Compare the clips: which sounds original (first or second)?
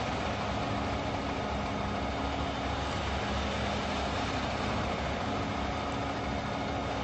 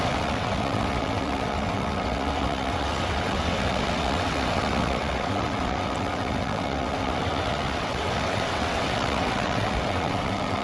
first